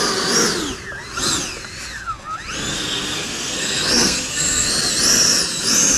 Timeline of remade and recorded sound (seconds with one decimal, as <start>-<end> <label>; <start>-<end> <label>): 0.0-2.7 recorded; 2.7-4.7 remade; 4.7-6.0 recorded